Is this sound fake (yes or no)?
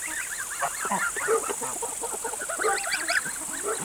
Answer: no